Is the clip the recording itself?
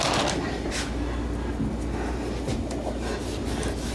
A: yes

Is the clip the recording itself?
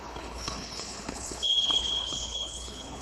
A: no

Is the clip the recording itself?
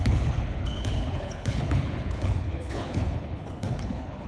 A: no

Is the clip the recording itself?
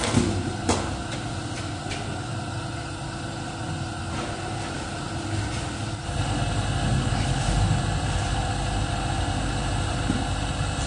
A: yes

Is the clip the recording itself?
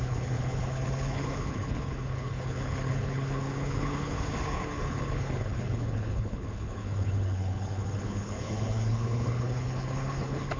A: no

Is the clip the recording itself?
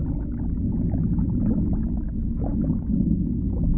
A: yes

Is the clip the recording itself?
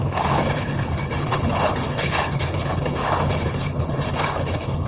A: no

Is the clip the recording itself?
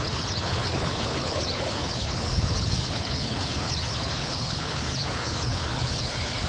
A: no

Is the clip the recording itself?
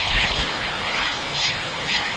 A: no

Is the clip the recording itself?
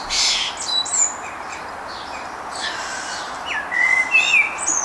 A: yes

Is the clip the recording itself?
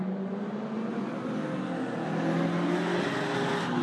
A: yes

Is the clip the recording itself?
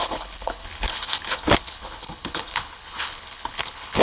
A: no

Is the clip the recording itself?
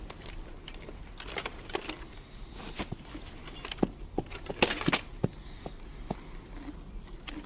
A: yes